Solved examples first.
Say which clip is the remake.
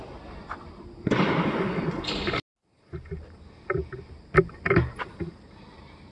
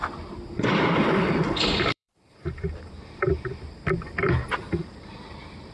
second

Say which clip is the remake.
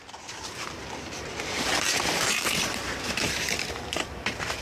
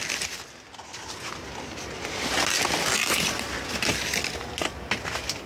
first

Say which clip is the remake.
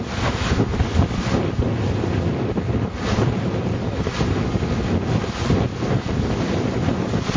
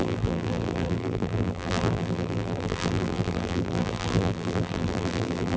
second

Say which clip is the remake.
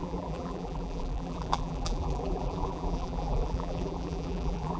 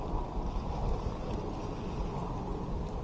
first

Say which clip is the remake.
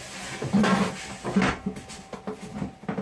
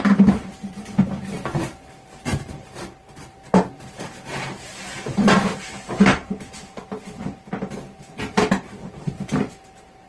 second